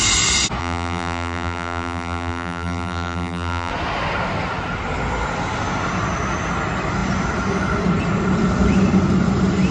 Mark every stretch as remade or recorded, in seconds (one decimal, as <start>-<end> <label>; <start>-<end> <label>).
0.0-0.6 recorded; 0.6-3.7 remade; 3.7-9.7 recorded